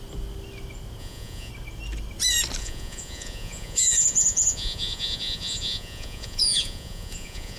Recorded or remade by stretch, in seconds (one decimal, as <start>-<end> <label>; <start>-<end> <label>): 0.0-1.0 recorded; 1.0-1.5 remade; 1.5-2.6 recorded; 2.6-7.6 remade

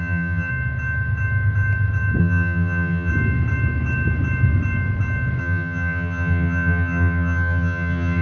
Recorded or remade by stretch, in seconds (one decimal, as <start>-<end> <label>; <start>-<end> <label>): 0.0-0.5 remade; 0.5-2.2 recorded; 2.2-3.1 remade; 3.1-5.4 recorded; 5.4-8.2 remade